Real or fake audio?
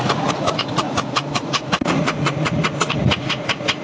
fake